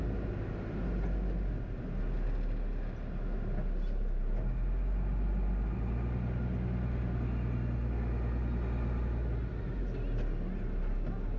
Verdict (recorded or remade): recorded